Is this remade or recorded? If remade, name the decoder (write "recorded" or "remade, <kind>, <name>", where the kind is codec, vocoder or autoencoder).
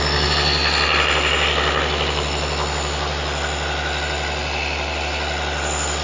recorded